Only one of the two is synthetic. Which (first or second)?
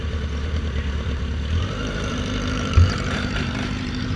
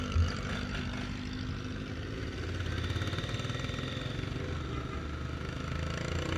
first